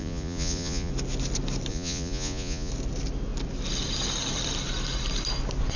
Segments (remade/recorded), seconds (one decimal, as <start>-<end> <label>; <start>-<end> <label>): 0.0-0.9 remade; 0.9-1.7 recorded; 1.7-2.7 remade; 2.7-5.8 recorded